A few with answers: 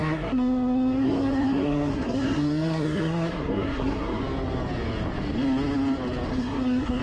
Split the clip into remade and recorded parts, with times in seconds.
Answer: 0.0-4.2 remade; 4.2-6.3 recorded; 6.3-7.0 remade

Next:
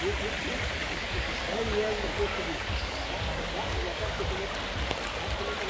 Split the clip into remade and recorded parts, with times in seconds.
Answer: 0.0-0.8 recorded; 0.8-4.2 remade; 4.2-5.7 recorded